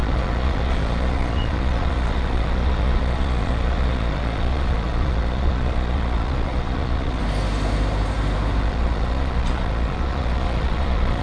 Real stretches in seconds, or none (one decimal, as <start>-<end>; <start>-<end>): 7.2-8.6